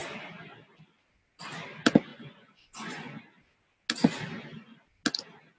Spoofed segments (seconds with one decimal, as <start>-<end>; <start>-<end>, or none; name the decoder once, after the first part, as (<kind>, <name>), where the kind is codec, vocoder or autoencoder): 2.1-3.2 (vocoder, Vocos)